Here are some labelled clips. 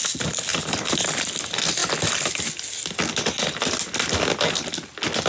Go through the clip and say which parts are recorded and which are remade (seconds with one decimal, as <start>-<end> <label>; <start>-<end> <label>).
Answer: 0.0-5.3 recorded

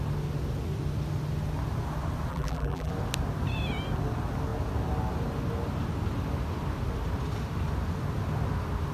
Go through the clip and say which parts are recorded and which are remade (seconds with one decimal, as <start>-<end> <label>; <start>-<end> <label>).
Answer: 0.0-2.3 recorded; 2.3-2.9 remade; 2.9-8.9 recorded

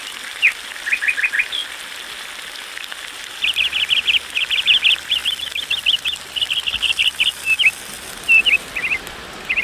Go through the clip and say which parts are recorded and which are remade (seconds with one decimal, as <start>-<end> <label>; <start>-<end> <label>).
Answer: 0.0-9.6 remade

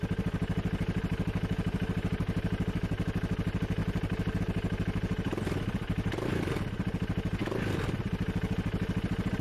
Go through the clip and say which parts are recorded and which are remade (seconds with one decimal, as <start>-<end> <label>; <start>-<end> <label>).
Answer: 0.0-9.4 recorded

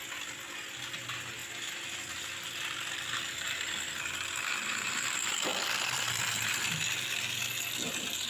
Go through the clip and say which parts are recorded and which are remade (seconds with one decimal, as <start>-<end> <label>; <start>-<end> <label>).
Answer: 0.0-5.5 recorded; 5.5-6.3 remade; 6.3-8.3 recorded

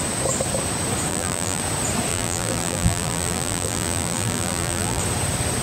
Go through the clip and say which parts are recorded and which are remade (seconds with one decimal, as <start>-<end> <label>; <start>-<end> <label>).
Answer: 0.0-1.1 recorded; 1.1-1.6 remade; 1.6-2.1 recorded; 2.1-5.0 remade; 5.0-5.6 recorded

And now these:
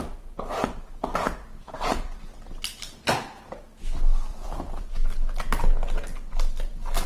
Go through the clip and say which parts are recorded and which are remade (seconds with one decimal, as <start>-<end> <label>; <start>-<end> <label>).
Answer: 0.0-4.3 recorded; 4.3-4.9 remade; 4.9-7.1 recorded

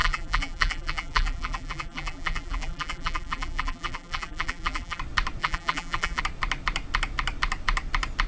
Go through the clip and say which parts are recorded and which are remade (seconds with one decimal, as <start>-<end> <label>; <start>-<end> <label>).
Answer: 0.0-5.0 remade; 5.0-5.4 recorded; 5.4-6.2 remade; 6.2-8.3 recorded